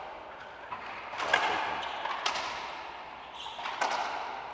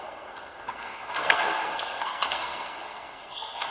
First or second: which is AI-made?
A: second